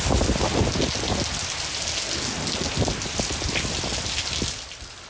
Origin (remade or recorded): recorded